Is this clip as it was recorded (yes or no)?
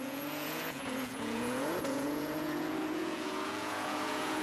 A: no